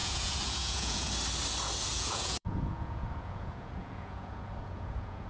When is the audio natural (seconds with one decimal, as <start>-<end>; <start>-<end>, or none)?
1.1-1.9